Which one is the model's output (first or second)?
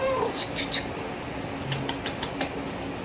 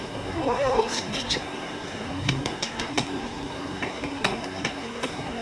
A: second